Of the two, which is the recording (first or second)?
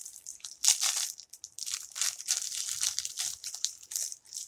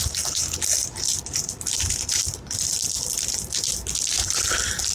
second